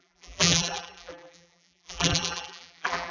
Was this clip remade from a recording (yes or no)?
yes